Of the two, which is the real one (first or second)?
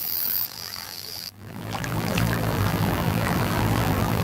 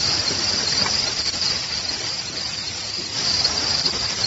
second